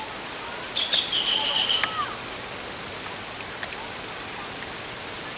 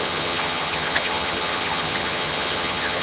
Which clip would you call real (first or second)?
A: first